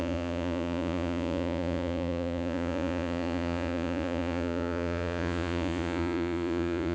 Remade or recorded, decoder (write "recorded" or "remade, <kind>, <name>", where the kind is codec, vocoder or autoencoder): remade, vocoder, Vocos